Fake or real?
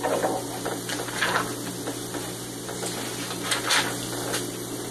real